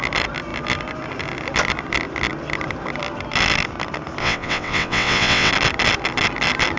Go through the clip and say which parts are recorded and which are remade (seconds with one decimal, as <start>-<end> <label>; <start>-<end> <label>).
0.0-4.2 recorded; 4.2-5.5 remade; 5.5-6.8 recorded